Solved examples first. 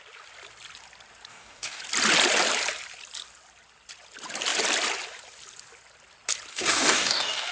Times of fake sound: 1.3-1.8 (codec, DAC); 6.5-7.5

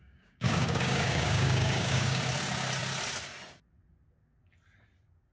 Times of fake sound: 0.0-2.2 (codec, DAC)

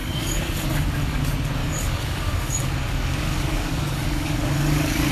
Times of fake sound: 0.0-1.2 (codec, DAC); 1.6-5.1

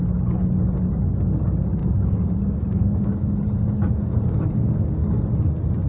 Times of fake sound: 1.8-5.2 (codec, DAC)

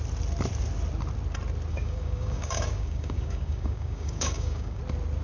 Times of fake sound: 1.7-4.8 (codec, DAC)

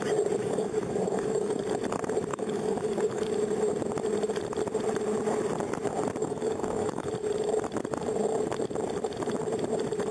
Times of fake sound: 0.4-1.6 (codec, DAC); 2.3-3.3; 6.2-7.1